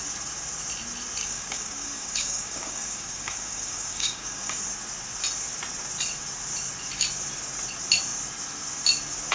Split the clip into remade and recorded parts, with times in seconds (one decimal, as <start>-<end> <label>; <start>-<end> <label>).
0.0-1.2 recorded; 1.2-4.6 remade; 4.6-9.3 recorded

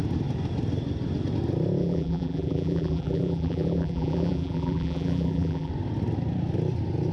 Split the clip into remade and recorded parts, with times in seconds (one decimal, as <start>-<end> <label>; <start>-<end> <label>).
0.0-1.8 recorded; 1.8-5.7 remade; 5.7-7.1 recorded

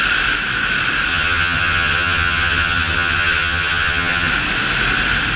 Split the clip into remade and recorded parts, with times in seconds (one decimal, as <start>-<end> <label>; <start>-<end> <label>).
0.0-1.1 recorded; 1.1-4.3 remade; 4.3-5.4 recorded

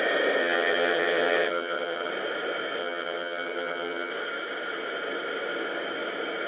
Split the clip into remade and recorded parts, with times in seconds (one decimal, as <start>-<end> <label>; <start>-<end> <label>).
0.0-0.4 recorded; 0.4-2.1 remade; 2.1-2.8 recorded; 2.8-4.1 remade; 4.1-6.5 recorded

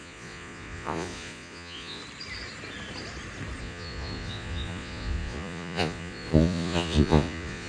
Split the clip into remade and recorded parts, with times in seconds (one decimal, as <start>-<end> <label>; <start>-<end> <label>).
0.0-2.0 remade; 2.0-3.6 recorded; 3.6-7.7 remade

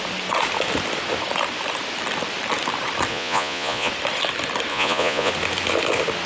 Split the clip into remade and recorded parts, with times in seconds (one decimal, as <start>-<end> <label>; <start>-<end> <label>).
0.0-3.1 recorded; 3.1-3.9 remade; 3.9-4.7 recorded; 4.7-5.3 remade; 5.3-6.3 recorded

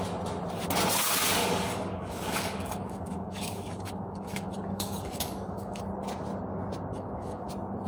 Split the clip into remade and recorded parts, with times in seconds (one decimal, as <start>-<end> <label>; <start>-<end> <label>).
0.0-1.4 recorded; 1.4-5.8 remade; 5.8-6.9 recorded; 6.9-7.5 remade; 7.5-7.9 recorded

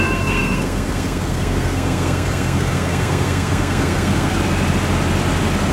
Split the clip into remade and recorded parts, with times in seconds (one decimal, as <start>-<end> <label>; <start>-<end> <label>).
0.0-4.3 remade; 4.3-5.7 recorded